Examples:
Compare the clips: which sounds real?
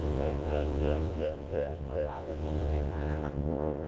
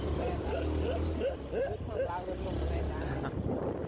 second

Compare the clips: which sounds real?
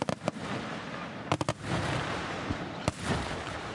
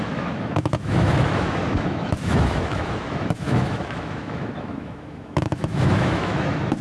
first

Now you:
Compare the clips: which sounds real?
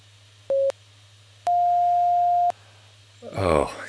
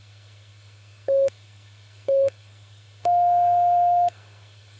first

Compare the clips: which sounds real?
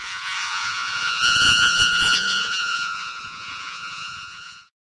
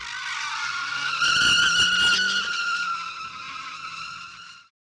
second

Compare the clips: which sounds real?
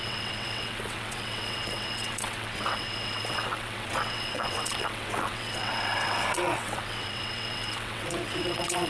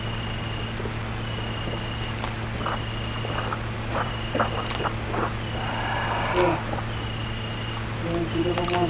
second